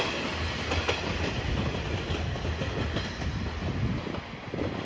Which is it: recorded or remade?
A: recorded